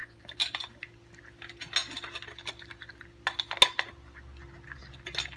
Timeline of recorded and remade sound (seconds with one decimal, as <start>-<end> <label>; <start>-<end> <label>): 0.0-0.9 remade; 0.9-5.4 recorded